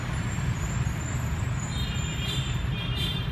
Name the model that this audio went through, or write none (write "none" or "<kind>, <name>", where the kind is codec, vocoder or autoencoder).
vocoder, BigVGAN v2